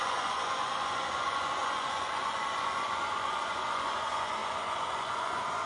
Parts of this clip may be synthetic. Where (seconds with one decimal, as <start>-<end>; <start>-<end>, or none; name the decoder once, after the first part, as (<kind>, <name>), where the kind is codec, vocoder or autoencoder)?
0.0-5.7 (vocoder, Vocos)